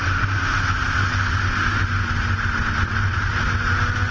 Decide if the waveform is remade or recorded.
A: recorded